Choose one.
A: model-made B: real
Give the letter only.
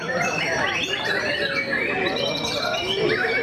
B